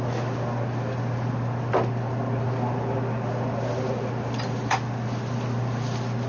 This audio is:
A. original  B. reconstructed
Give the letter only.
A